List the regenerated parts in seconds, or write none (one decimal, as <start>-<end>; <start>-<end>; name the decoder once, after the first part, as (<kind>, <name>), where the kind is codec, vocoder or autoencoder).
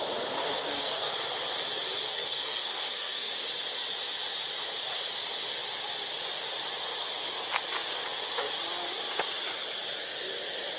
0.4-1.1 (codec, SNAC); 2.0-3.3